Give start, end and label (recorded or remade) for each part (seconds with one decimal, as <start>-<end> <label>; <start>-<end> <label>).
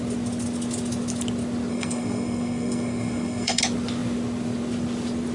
0.0-1.7 recorded; 1.7-3.6 remade; 3.6-5.3 recorded